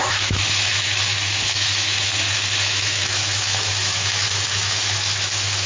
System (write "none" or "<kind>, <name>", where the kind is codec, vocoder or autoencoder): autoencoder, DAC-VAE